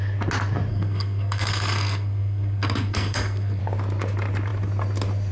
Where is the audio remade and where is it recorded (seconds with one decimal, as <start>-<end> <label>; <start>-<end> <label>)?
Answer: 0.0-0.7 recorded; 0.7-3.6 remade; 3.6-5.3 recorded